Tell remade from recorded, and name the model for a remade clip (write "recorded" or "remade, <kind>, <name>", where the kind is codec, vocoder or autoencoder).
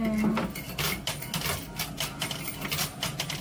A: recorded